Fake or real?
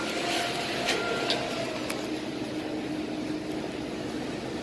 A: real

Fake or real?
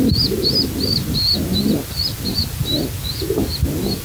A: real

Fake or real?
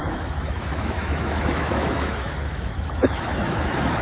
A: fake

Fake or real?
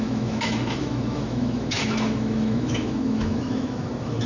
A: fake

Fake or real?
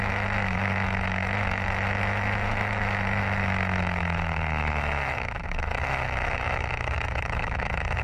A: fake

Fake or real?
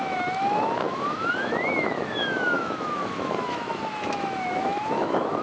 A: fake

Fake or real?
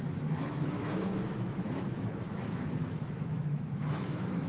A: fake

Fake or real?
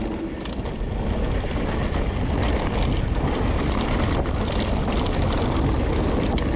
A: real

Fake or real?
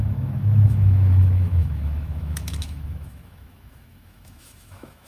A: fake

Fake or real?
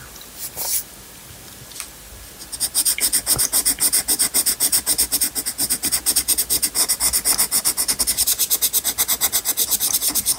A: real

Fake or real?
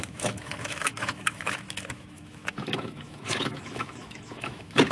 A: fake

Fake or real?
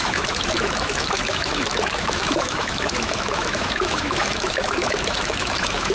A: fake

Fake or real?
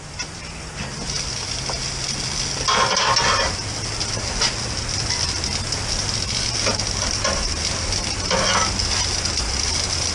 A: real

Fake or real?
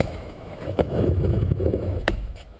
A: fake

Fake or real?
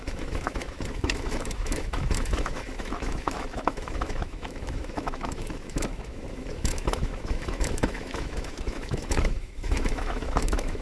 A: fake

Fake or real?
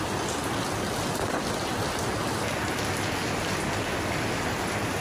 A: real